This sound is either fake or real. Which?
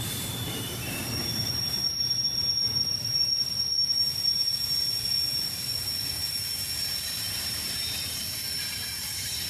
fake